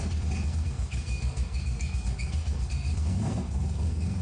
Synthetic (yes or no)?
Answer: yes